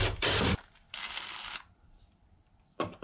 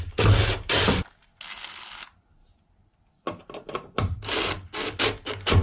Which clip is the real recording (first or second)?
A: second